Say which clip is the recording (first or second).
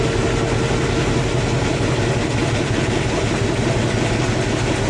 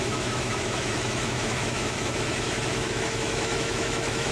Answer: first